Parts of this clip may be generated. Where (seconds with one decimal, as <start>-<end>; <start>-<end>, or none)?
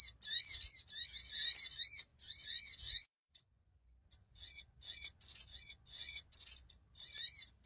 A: 2.1-6.7